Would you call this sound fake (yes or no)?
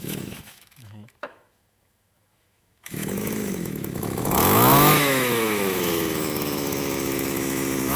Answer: yes